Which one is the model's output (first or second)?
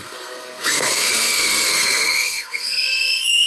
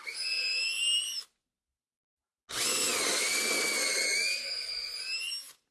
first